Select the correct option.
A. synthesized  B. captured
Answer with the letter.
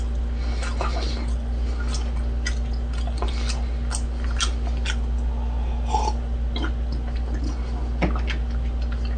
B